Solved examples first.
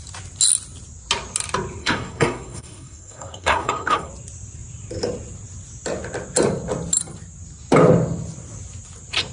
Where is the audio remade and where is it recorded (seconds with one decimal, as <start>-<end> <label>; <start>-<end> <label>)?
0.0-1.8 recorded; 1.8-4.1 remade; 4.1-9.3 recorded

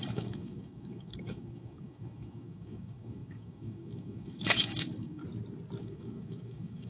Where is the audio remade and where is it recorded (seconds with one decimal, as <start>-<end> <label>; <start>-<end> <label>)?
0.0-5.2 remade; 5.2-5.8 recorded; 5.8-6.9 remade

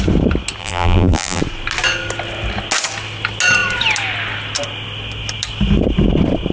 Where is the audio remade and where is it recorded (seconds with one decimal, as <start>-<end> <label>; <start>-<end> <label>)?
0.0-0.6 recorded; 0.6-1.4 remade; 1.4-6.5 recorded